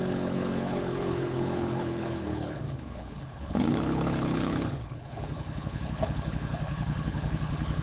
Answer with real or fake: fake